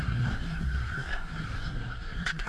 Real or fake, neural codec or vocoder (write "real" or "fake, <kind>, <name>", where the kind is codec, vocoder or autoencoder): fake, codec, SNAC